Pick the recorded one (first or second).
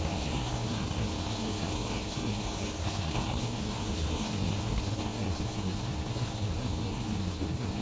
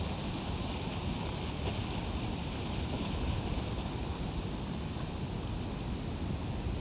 second